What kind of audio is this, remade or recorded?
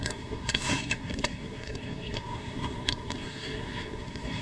remade